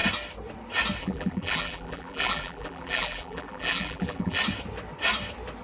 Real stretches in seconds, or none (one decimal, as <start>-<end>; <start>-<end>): 0.0-1.0; 4.4-5.6